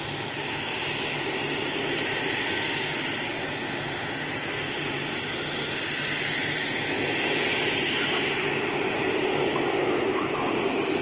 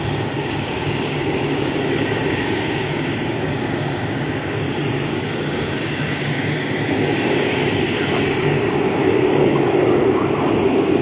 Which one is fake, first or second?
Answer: second